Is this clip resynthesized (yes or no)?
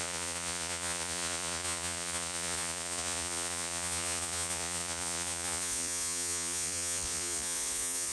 yes